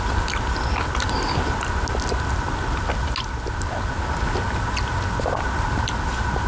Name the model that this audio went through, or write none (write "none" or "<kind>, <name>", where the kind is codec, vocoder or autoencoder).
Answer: none